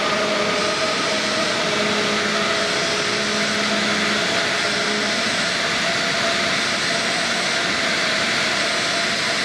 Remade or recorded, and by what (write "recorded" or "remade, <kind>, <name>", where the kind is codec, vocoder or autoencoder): recorded